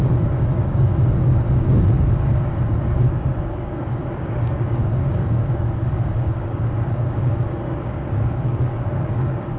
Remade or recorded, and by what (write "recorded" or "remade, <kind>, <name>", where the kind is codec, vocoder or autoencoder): remade, codec, DAC